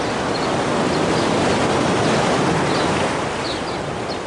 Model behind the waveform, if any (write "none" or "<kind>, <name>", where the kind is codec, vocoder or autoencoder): none